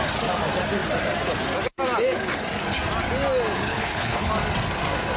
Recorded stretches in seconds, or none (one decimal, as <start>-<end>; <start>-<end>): 0.0-3.7; 4.3-5.2